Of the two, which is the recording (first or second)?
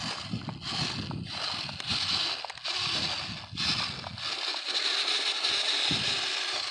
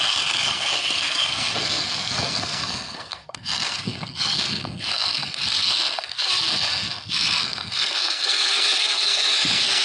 first